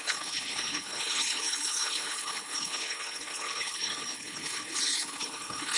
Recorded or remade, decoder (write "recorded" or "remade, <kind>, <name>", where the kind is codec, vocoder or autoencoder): remade, codec, HILCodec